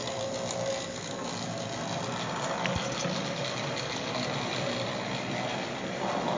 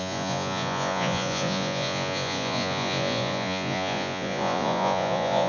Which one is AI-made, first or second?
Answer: second